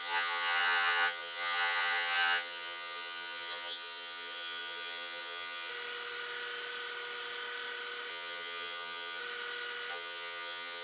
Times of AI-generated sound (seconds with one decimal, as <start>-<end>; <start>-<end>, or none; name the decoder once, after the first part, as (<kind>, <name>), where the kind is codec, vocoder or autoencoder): 0.0-5.7 (vocoder, HiFi-GAN); 8.1-9.2; 9.9-10.8